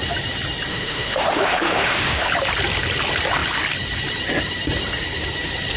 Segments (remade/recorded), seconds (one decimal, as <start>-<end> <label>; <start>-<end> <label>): 0.0-0.7 recorded; 0.7-2.3 remade; 2.3-5.8 recorded